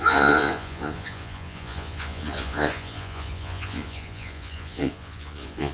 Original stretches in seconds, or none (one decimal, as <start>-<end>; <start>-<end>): none